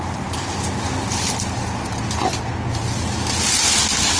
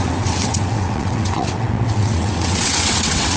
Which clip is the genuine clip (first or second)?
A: first